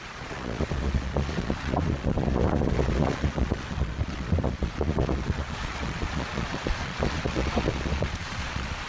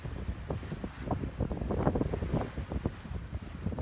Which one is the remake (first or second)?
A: first